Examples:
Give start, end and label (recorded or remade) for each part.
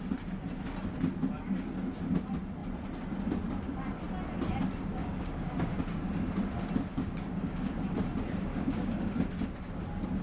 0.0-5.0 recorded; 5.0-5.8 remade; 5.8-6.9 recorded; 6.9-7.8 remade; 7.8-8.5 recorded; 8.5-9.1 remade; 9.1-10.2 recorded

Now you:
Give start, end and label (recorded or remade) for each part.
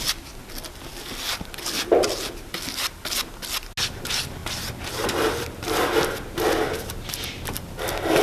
0.0-8.2 recorded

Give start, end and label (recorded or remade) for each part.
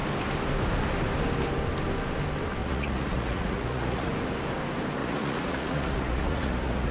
0.0-2.6 recorded; 2.6-4.1 remade; 4.1-5.0 recorded; 5.0-6.9 remade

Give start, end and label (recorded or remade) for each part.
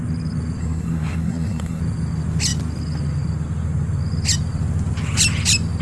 0.0-0.6 recorded; 0.6-1.8 remade; 1.8-5.8 recorded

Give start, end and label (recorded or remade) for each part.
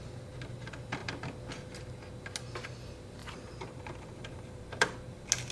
0.0-3.2 recorded; 3.2-4.6 remade; 4.6-5.5 recorded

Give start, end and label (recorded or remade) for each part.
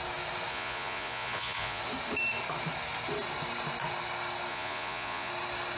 0.0-0.5 recorded; 0.5-1.8 remade; 1.8-4.5 recorded; 4.5-5.3 remade; 5.3-5.8 recorded